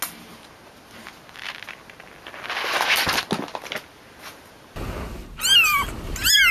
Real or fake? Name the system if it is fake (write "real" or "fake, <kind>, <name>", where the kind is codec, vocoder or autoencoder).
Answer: real